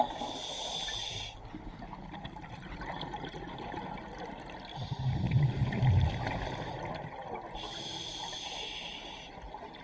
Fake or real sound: real